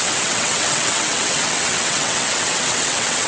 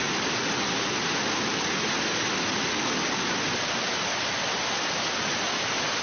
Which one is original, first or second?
second